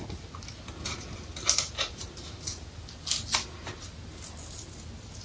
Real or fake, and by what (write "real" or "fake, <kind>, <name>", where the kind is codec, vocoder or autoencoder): real